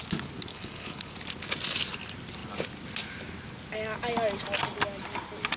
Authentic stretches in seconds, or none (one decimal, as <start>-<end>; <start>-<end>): 0.0-0.5; 1.1-5.6